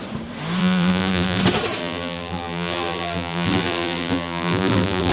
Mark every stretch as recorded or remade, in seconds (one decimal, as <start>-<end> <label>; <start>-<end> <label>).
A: 0.0-0.6 recorded; 0.6-1.4 remade; 1.4-1.8 recorded; 1.8-5.1 remade